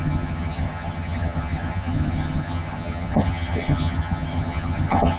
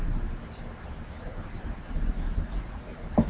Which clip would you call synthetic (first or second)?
first